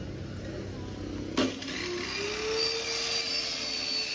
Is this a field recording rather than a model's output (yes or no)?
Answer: yes